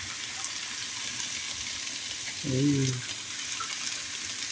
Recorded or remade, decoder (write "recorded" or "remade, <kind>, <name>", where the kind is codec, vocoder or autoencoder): recorded